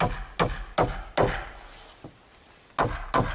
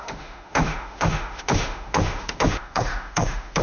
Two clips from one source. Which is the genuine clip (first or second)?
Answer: first